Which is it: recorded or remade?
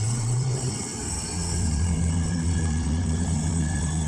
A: remade